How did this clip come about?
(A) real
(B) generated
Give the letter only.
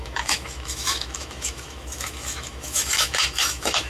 B